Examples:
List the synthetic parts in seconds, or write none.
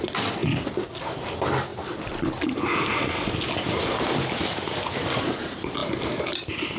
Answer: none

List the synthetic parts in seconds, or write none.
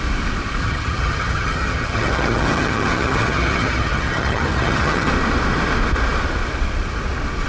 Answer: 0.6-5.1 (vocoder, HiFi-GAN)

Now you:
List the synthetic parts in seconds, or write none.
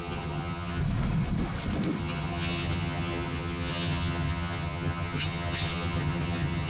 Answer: 0.0-0.8 (vocoder, HiFi-GAN); 2.0-6.7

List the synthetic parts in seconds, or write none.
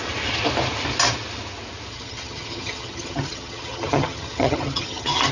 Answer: 1.9-5.3 (vocoder, HiFi-GAN)